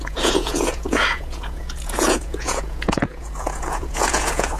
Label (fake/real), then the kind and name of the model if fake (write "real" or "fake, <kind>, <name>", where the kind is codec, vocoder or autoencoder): fake, vocoder, Vocos